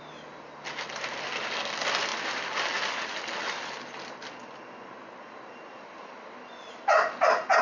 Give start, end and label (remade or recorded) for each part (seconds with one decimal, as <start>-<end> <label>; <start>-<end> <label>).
0.0-7.6 recorded